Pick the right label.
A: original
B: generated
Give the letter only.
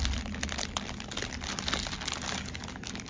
A